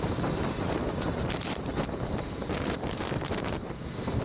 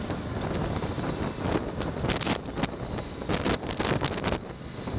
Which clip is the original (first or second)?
second